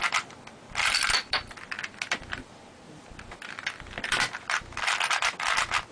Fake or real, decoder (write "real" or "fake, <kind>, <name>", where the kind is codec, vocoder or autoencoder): real